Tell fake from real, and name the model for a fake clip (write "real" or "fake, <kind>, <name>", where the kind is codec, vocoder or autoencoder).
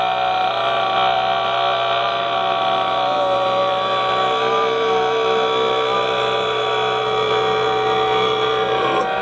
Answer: real